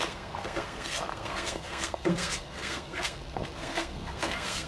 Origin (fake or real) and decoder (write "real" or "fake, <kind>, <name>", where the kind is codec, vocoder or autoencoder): fake, codec, SNAC